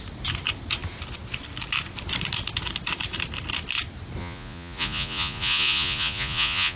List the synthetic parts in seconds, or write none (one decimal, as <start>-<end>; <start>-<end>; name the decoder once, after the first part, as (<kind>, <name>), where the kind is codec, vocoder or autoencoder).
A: 4.2-6.8 (vocoder, Vocos)